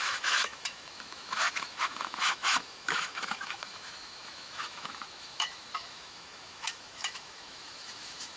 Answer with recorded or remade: remade